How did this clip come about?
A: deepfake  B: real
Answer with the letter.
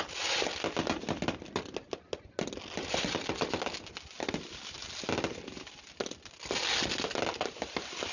B